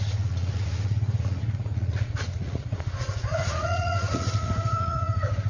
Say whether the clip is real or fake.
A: fake